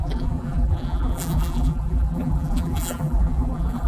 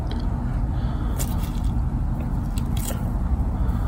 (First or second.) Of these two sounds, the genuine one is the second